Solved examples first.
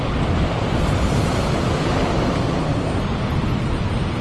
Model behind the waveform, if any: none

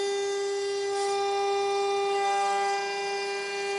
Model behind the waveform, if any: none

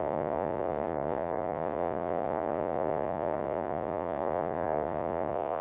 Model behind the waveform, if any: vocoder, Vocos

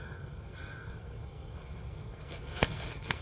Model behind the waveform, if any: codec, SNAC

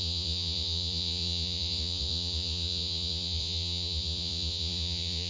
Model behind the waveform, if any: vocoder, Vocos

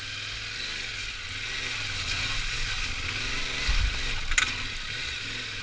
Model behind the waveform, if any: none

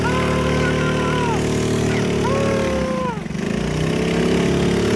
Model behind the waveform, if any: none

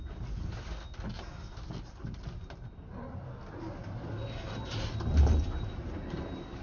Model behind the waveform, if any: none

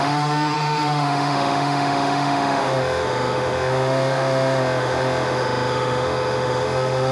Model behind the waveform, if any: autoencoder, DAC-VAE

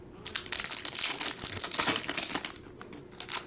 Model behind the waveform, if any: none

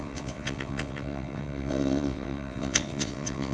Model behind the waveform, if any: vocoder, WaveNeXt